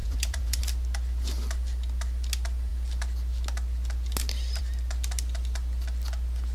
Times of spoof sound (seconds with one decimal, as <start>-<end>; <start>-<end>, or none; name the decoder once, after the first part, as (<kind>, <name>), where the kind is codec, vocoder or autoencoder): 0.0-0.6 (vocoder, Vocos)